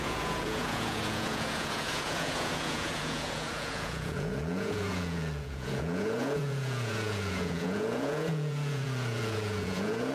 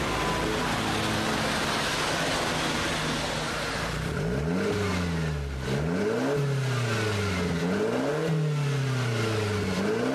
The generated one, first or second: first